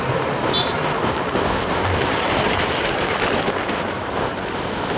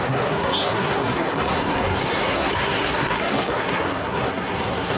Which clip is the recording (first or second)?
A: first